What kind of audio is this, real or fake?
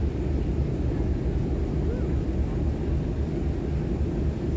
real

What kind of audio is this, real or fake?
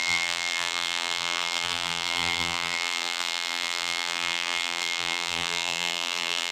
fake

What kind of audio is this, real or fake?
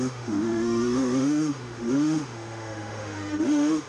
fake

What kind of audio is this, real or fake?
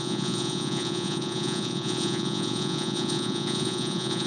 fake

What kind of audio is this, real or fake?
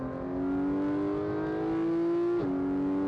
real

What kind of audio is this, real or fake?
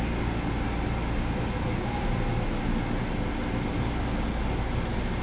real